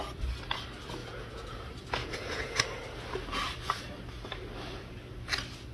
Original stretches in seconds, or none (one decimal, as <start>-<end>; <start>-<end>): 0.0-1.0; 1.6-2.0; 2.6-5.7